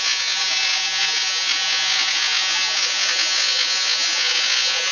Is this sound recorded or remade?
remade